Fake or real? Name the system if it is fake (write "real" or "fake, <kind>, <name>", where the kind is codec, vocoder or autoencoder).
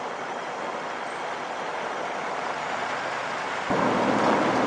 real